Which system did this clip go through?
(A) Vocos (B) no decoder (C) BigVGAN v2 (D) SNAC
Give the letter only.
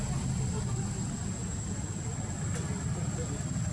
B